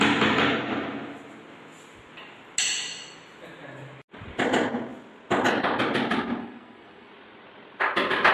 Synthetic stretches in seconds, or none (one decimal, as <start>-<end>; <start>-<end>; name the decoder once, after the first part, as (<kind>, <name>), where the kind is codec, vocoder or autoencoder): 6.4-7.1 (codec, SNAC)